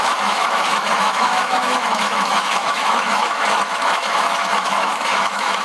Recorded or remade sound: remade